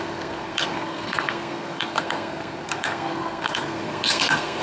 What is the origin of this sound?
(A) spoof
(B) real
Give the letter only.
A